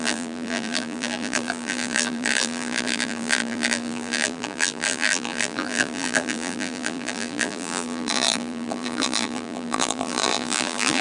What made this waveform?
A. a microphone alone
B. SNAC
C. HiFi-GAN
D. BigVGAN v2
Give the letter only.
D